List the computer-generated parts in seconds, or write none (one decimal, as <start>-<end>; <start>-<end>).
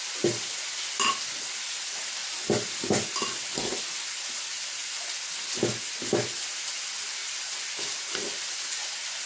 none